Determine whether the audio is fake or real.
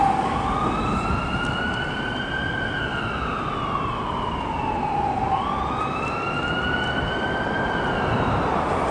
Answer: real